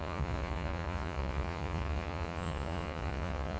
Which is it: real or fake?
fake